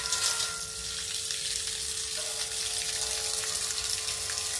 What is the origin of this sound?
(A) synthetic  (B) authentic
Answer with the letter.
B